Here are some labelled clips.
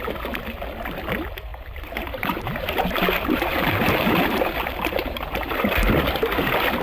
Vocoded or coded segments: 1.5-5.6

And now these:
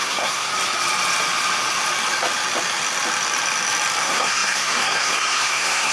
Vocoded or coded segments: 0.0-0.5; 4.0-5.9

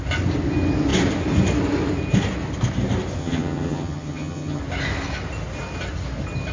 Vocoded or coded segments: 3.2-4.6

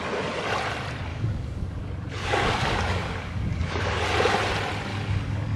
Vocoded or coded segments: 1.1-4.1; 4.9-5.6

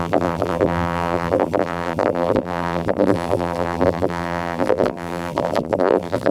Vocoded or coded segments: 0.0-6.3

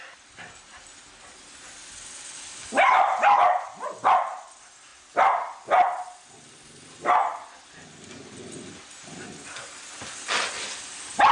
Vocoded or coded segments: none

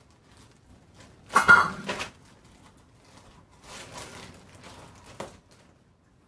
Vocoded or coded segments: none

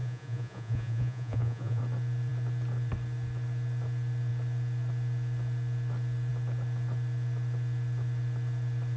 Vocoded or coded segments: 0.0-1.8